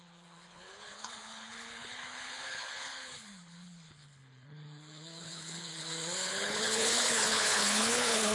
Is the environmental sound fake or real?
fake